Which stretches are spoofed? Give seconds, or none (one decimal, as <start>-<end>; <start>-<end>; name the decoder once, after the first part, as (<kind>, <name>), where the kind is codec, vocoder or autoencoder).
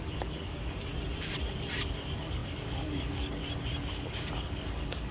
0.0-0.9 (codec, DAC); 1.8-3.4; 3.9-5.1